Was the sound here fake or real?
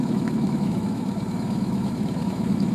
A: fake